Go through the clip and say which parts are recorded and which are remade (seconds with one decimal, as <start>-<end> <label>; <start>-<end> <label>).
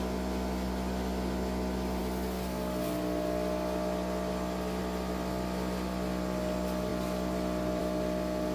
0.0-8.5 recorded